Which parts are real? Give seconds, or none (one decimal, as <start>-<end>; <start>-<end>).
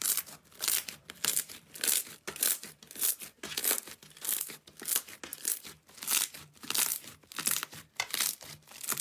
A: 3.6-5.5